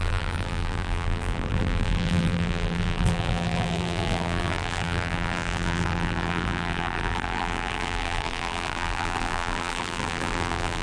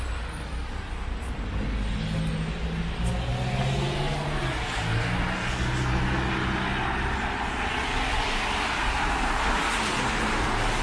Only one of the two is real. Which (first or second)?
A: second